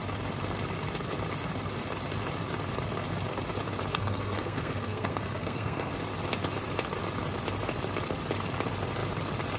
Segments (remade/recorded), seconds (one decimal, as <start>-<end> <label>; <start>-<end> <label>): 0.0-3.9 recorded; 3.9-5.9 remade; 5.9-9.6 recorded